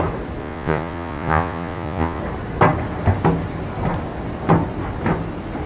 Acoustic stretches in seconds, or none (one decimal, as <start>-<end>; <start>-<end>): 0.0-0.4; 2.2-5.7